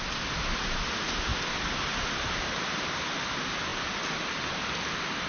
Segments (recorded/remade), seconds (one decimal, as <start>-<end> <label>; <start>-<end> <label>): 0.0-5.3 recorded